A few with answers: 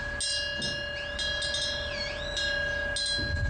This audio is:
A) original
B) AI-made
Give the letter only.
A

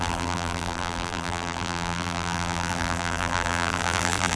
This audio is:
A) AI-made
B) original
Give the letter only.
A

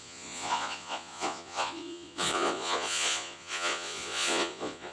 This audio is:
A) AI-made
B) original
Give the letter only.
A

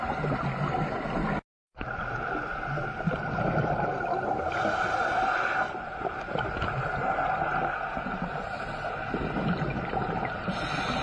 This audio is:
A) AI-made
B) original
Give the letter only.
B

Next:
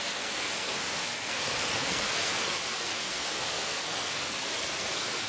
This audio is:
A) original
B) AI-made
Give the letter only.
B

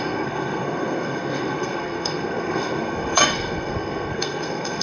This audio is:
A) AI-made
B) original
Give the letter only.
A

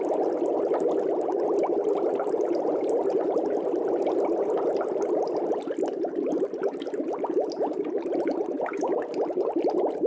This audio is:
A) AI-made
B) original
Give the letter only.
B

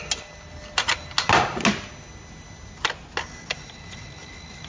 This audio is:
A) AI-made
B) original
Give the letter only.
B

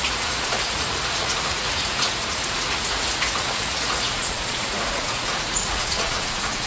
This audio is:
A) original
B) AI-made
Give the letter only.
B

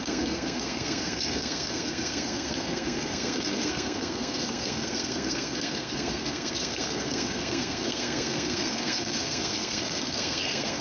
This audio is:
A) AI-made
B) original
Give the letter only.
A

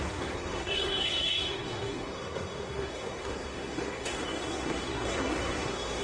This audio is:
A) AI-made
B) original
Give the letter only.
A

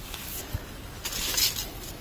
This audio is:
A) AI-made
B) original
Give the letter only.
B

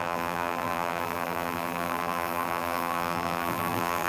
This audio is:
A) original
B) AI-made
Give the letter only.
B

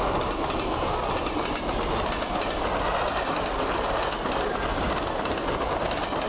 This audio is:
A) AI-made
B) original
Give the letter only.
B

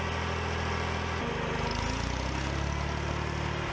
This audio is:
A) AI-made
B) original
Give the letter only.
B